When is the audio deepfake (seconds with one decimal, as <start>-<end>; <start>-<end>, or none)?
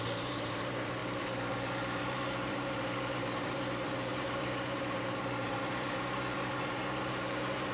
0.0-7.7